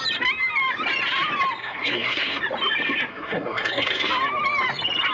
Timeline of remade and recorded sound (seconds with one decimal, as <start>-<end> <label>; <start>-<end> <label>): 0.0-1.6 recorded; 1.6-2.4 remade; 2.4-3.1 recorded; 3.1-4.1 remade; 4.1-5.1 recorded